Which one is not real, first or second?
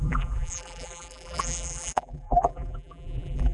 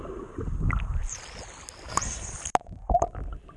first